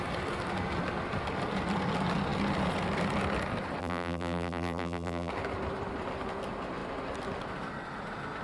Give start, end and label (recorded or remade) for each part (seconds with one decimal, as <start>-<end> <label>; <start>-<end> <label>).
0.0-3.8 recorded; 3.8-5.3 remade; 5.3-8.4 recorded